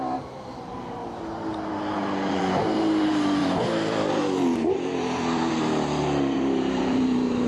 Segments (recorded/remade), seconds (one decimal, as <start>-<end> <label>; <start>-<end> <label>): 0.0-7.5 remade